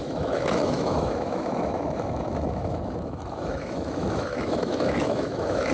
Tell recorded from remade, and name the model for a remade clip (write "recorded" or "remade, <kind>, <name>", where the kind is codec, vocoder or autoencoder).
remade, autoencoder, DAC-VAE